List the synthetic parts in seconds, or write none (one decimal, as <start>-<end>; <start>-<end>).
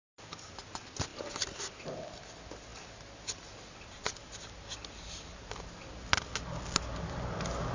none